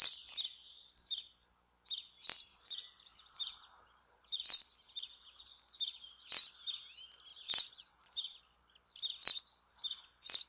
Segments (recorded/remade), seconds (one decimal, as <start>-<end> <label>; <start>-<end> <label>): 0.0-2.5 recorded; 2.5-5.4 remade; 5.4-7.3 recorded; 7.3-8.4 remade; 8.4-10.5 recorded